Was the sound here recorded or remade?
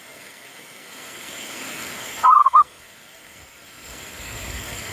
remade